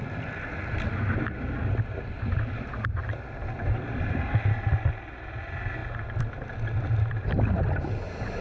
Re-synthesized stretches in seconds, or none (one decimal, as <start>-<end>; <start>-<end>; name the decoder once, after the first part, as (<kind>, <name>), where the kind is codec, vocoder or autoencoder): none